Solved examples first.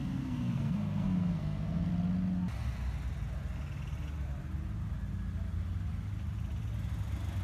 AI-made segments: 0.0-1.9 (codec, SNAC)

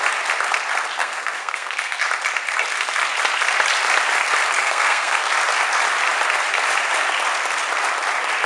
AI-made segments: 1.0-2.0 (codec, SNAC); 4.6-5.3